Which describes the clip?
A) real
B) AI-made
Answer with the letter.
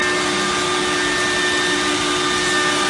A